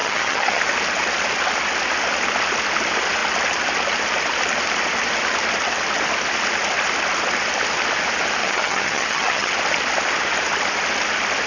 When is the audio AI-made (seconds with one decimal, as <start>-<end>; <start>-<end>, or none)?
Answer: 0.0-0.6; 8.4-9.5